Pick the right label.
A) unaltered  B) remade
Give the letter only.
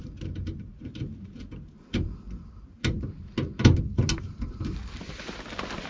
A